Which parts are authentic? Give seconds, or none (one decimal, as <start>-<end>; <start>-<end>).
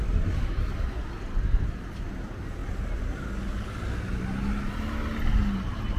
0.0-6.0